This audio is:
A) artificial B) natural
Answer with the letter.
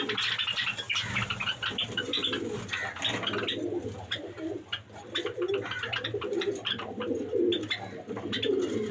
B